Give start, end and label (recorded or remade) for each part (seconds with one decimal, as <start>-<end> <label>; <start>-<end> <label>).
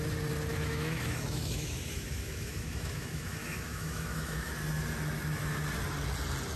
0.0-0.5 recorded; 0.5-4.5 remade; 4.5-6.6 recorded